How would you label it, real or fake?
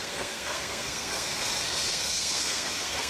fake